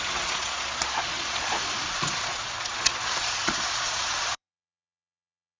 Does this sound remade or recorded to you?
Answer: remade